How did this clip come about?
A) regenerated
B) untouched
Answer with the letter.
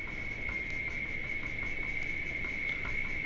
B